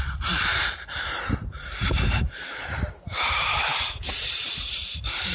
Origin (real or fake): fake